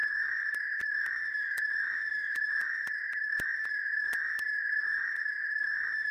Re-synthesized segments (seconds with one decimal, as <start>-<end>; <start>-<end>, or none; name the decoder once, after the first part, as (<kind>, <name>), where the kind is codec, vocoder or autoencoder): 0.0-6.1 (autoencoder, DAC-VAE)